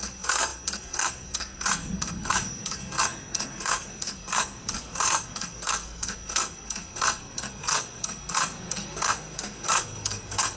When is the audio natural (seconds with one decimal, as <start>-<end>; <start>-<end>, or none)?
none